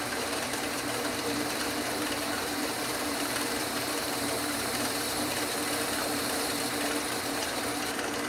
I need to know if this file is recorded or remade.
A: remade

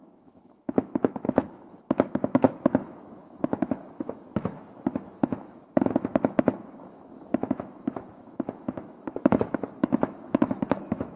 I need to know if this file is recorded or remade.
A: remade